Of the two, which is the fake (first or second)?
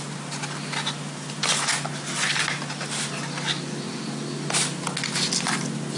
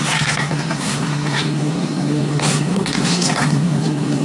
second